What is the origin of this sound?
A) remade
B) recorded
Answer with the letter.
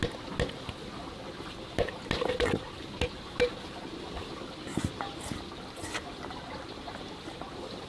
B